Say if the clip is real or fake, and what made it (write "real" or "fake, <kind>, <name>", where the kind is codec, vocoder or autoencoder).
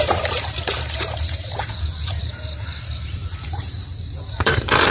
fake, vocoder, BigVGAN v2